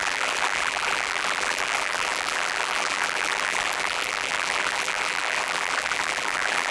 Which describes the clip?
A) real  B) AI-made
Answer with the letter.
B